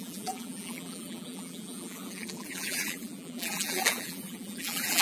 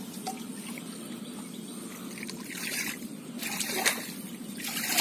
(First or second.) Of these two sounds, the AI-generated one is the first